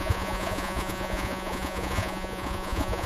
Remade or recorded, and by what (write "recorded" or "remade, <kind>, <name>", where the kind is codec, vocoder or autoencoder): remade, vocoder, Vocos